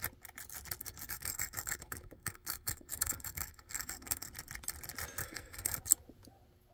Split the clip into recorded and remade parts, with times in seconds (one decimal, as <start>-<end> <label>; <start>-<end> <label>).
0.0-0.8 recorded; 0.8-4.3 remade; 4.3-5.2 recorded; 5.2-5.8 remade; 5.8-6.7 recorded